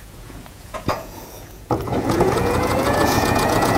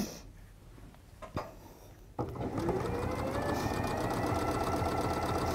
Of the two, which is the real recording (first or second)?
second